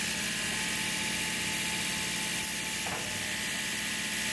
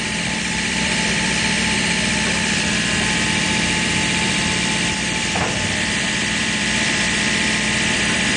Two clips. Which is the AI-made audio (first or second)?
second